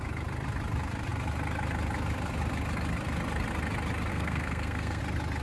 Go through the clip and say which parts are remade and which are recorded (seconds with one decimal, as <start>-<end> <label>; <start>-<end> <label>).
0.0-4.1 recorded; 4.1-5.0 remade; 5.0-5.4 recorded